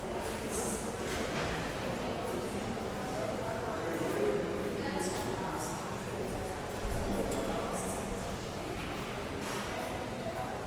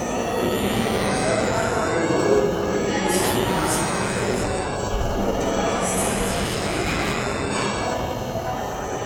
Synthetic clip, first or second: second